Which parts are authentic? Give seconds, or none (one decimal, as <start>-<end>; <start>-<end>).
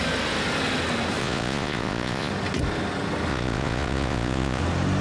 0.0-1.2; 2.3-3.3; 4.6-5.0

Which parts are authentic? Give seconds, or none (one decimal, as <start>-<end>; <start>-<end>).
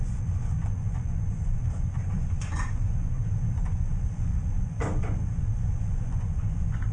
none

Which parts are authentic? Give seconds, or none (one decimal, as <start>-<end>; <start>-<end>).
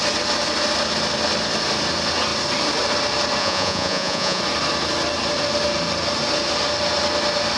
0.0-3.4; 4.4-7.6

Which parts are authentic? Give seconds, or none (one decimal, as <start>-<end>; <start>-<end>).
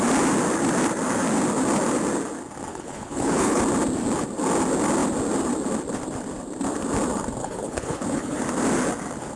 0.0-2.7; 3.6-7.4; 8.4-9.4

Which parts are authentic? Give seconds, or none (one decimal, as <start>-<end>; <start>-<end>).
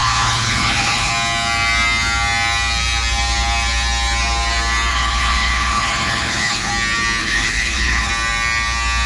1.1-4.9; 6.7-7.2; 8.1-9.1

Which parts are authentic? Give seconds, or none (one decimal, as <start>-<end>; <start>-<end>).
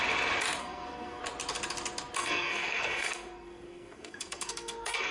0.0-0.6; 1.2-2.2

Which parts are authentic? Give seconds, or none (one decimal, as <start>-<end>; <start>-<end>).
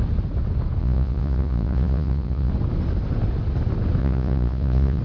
0.0-0.8; 2.5-4.0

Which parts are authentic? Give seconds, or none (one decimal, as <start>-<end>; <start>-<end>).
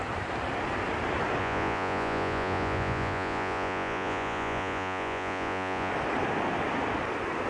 0.0-1.4; 5.9-7.5